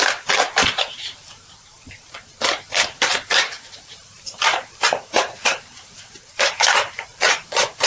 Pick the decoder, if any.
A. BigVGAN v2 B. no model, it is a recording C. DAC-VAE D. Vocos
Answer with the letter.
A